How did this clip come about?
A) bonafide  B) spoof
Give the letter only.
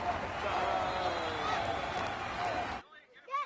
A